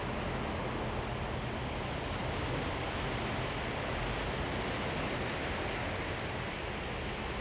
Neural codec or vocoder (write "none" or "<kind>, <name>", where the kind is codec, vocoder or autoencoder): none